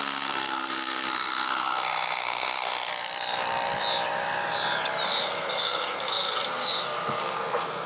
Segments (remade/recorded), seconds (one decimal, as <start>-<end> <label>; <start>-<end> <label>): 0.0-2.9 remade; 2.9-5.1 recorded; 5.1-7.9 remade